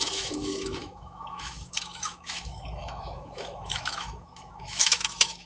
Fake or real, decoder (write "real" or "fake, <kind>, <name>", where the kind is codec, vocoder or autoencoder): fake, autoencoder, DAC-VAE